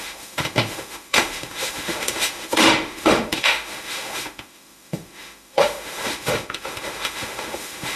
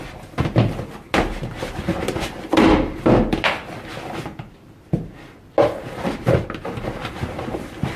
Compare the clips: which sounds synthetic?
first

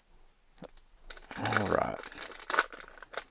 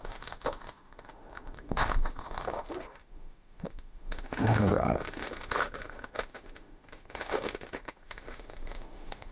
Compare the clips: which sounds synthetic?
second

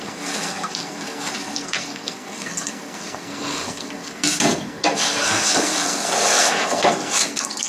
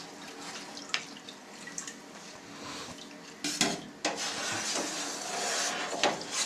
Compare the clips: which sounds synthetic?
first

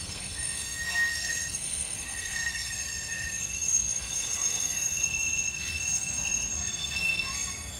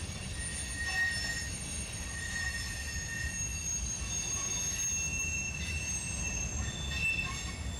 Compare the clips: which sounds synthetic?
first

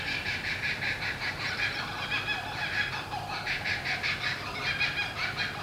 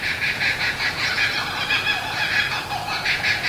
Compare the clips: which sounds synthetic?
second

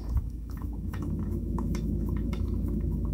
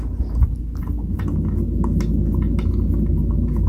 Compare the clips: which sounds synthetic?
first